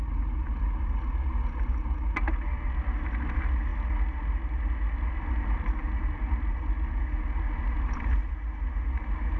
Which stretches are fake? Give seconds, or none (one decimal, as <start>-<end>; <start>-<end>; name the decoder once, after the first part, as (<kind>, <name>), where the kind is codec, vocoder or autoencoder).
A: none